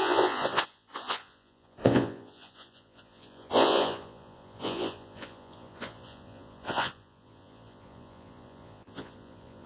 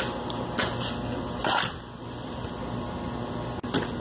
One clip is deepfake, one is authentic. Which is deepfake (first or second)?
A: first